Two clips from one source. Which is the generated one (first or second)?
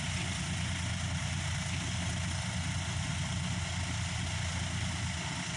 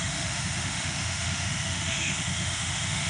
second